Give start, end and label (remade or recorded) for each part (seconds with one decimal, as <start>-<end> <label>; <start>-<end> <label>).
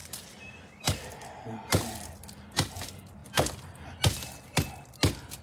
0.0-5.4 recorded